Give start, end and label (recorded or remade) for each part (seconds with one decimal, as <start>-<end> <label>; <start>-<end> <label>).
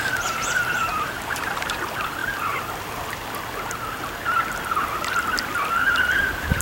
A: 0.0-0.9 recorded; 0.9-1.8 remade; 1.8-6.6 recorded